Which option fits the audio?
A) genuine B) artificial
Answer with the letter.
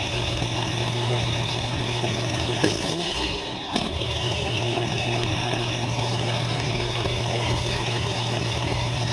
B